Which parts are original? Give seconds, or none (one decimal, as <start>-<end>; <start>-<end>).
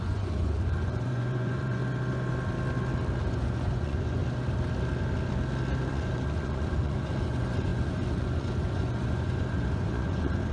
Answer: 1.8-3.3; 4.2-5.9